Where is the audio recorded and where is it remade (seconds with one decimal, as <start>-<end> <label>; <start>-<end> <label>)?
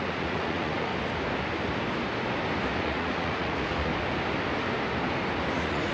0.0-0.9 remade; 0.9-2.8 recorded; 2.8-3.9 remade; 3.9-5.5 recorded; 5.5-5.9 remade